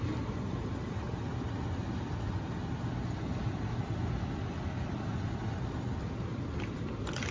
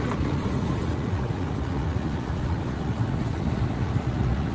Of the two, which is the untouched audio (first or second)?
first